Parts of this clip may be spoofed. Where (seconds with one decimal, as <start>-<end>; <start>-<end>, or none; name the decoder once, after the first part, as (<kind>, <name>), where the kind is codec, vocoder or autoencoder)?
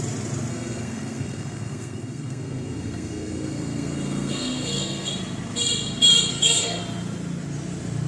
0.5-5.1 (codec, SNAC); 6.3-6.8